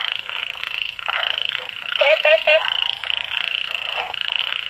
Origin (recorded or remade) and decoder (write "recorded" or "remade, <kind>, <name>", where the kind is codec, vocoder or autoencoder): remade, codec, SNAC